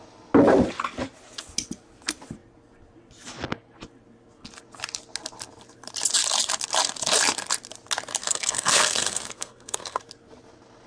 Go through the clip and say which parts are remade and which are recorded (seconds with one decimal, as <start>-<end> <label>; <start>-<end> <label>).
0.0-8.2 recorded; 8.2-10.0 remade; 10.0-10.9 recorded

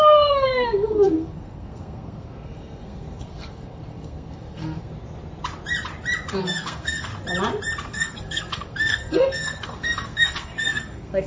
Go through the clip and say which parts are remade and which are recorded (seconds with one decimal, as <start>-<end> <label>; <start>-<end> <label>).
0.0-4.9 remade; 4.9-6.4 recorded; 6.4-7.1 remade; 7.1-7.9 recorded; 7.9-11.3 remade

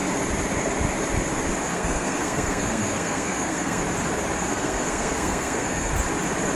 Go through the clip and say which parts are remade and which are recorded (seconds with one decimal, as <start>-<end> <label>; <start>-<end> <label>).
0.0-1.7 recorded; 1.7-3.8 remade; 3.8-4.5 recorded; 4.5-5.9 remade; 5.9-6.6 recorded

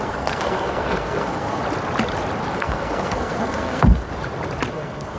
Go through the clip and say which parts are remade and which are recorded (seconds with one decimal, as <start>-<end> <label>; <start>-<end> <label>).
0.0-1.6 remade; 1.6-2.5 recorded; 2.5-4.1 remade; 4.1-4.7 recorded; 4.7-5.2 remade